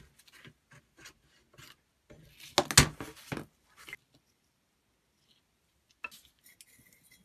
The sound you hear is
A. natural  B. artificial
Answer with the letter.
A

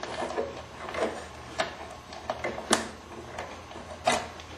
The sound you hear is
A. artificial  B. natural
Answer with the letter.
B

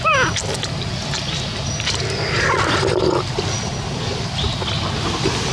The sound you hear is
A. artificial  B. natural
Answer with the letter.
B